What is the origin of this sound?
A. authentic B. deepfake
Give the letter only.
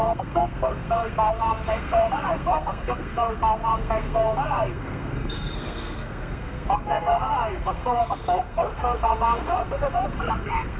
B